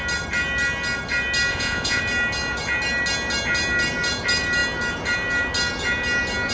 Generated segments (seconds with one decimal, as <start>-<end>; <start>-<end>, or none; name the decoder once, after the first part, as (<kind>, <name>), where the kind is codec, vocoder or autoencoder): 1.5-2.0 (vocoder, Vocos)

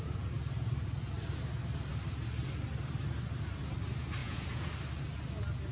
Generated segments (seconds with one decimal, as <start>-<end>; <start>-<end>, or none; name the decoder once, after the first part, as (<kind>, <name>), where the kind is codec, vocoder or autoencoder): 4.2-4.7 (vocoder, Vocos)

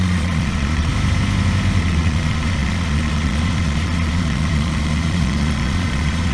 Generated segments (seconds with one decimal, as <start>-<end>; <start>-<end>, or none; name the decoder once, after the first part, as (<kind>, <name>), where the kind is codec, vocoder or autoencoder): 0.0-0.9 (vocoder, Vocos); 1.8-6.3

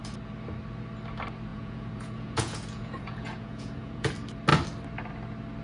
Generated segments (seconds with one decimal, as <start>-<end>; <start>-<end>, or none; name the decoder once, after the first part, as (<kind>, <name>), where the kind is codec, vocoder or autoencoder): 1.5-4.1 (vocoder, Vocos)